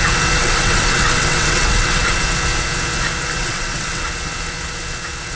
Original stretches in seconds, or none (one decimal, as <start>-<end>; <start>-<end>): 0.0-0.4; 2.1-3.4; 4.0-5.4